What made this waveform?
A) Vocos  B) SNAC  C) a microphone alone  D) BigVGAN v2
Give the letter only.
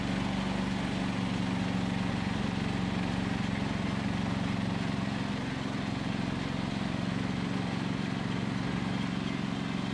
C